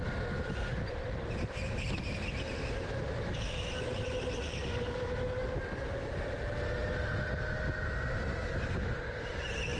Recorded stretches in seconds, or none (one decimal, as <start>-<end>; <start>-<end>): 0.0-9.8